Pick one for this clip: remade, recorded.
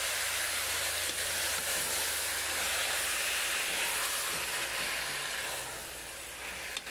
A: recorded